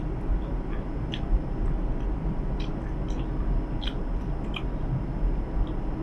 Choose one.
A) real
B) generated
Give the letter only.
A